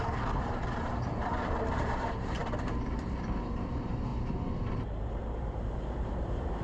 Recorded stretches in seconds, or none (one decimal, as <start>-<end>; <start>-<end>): none